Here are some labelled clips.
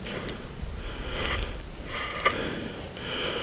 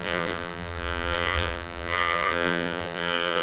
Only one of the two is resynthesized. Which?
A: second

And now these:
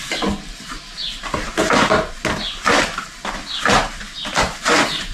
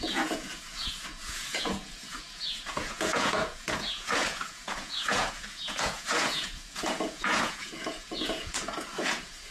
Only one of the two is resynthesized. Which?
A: second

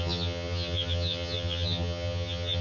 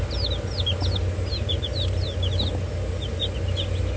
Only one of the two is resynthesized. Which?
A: first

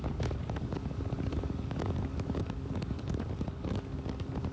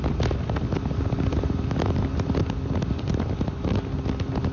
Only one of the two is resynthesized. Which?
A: first